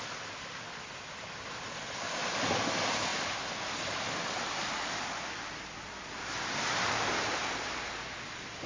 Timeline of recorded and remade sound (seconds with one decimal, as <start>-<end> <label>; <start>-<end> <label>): 0.0-8.7 recorded